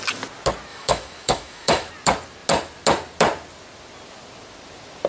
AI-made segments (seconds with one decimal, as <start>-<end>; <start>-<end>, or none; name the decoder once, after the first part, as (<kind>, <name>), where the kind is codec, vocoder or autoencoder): 0.7-1.9 (autoencoder, DAC-VAE)

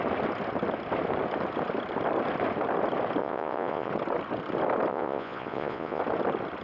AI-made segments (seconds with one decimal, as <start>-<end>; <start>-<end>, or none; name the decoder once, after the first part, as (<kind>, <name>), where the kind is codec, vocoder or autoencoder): 3.2-3.9 (vocoder, Vocos); 4.9-6.0

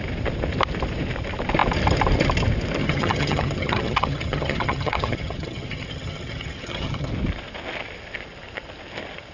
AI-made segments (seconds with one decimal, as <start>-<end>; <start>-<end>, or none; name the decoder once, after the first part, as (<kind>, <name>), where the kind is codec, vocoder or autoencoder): 2.8-7.1 (vocoder, HiFi-GAN)